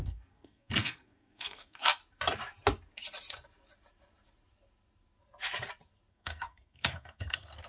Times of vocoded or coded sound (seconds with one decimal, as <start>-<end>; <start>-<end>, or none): 0.0-2.0; 6.1-7.7